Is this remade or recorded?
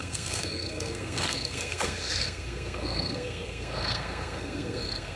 remade